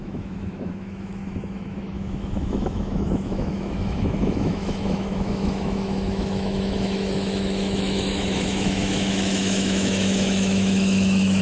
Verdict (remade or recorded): remade